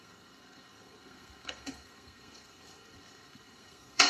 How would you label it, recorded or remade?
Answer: remade